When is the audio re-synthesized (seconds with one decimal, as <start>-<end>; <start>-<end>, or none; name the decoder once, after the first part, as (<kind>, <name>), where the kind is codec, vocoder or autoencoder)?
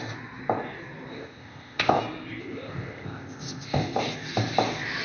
1.1-2.0 (codec, ZipCodec); 2.4-4.0